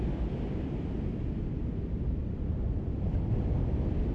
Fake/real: real